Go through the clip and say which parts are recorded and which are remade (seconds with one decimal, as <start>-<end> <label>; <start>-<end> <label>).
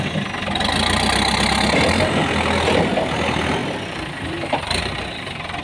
0.0-3.6 recorded; 3.6-4.8 remade; 4.8-5.6 recorded